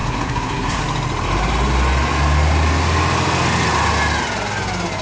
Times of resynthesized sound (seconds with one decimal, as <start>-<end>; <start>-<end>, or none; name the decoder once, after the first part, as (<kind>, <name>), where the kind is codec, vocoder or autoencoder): 0.0-0.8 (codec, SNAC)